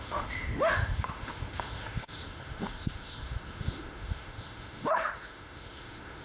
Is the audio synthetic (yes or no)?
yes